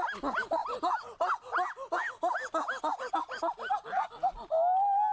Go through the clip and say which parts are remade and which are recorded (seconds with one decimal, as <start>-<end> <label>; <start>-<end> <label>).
0.0-5.1 recorded